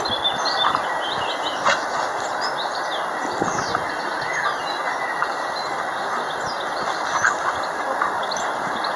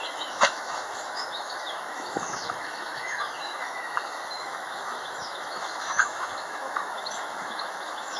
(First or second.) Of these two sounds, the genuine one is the first